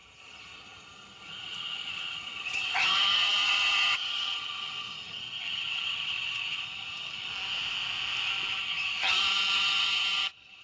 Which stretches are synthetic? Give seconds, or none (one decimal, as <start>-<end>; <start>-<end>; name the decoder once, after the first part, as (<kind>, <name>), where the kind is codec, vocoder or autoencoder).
0.0-7.3 (vocoder, HiFi-GAN); 8.6-10.6